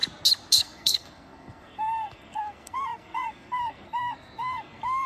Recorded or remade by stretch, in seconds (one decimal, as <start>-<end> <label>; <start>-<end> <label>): 0.0-0.5 recorded; 0.5-5.1 remade